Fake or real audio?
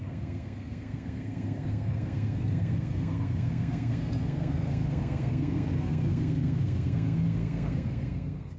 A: fake